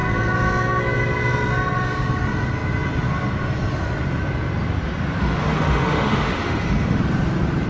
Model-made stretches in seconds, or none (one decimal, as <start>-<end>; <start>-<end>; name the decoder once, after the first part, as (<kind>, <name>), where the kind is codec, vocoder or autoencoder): 5.2-7.0 (autoencoder, DAC-VAE)